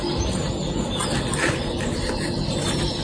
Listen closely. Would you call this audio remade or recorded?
recorded